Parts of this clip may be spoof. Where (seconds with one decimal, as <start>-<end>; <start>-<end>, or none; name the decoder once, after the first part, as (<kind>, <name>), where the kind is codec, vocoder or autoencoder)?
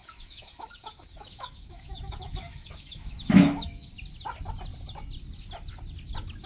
0.0-3.9 (autoencoder, DAC-VAE)